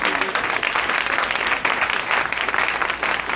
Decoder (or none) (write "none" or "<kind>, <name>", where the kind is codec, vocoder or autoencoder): none